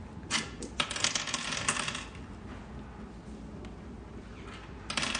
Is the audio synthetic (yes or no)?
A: no